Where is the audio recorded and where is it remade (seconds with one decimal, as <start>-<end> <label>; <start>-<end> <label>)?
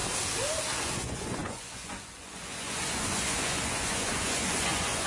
0.0-0.8 recorded; 0.8-5.1 remade